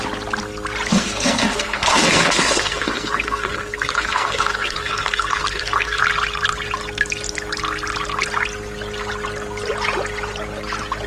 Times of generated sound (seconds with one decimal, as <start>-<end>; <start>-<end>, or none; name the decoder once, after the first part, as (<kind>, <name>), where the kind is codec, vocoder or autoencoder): 0.9-6.0 (codec, SNAC)